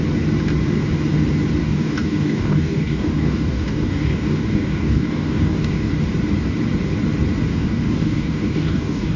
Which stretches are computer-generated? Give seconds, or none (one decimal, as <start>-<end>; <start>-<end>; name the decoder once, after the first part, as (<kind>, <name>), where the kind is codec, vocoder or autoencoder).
1.6-5.9 (codec, DAC); 7.5-9.2